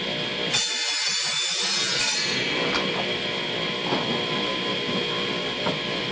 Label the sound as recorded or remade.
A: recorded